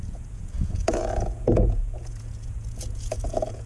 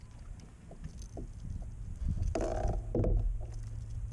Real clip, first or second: second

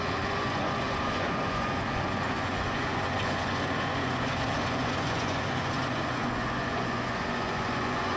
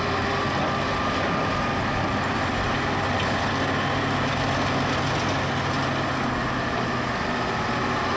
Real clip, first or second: second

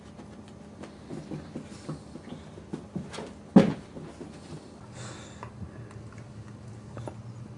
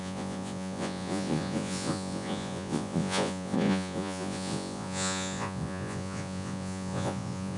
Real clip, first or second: first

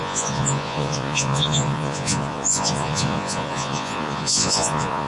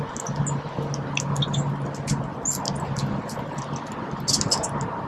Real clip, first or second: second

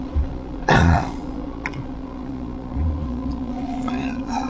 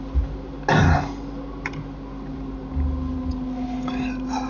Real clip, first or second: second